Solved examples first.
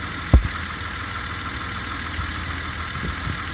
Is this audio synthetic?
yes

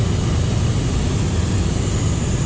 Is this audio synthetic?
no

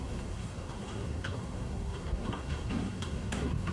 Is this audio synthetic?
yes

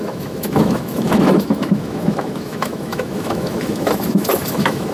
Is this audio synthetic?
yes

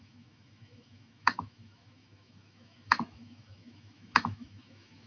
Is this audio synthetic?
yes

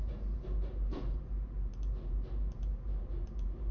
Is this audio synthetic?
yes